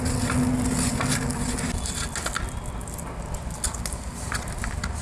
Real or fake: real